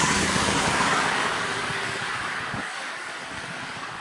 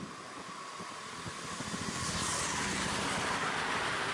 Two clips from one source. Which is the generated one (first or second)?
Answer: first